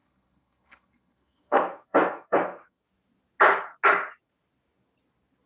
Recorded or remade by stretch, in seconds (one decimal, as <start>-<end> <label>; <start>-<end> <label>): 0.0-2.8 remade; 2.8-5.5 recorded